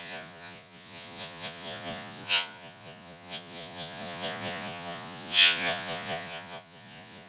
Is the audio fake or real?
fake